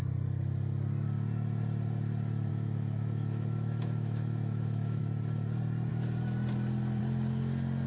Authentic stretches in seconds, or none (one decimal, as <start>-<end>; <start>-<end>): 0.0-2.5; 5.0-7.9